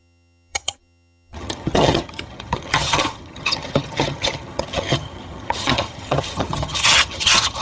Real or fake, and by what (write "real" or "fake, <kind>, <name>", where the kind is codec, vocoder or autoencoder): fake, vocoder, HiFi-GAN